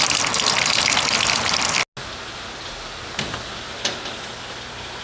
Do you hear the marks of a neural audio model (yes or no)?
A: no